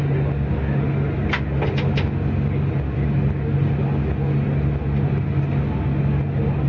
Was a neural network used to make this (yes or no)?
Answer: no